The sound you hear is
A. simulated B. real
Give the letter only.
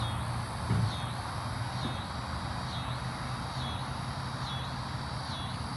B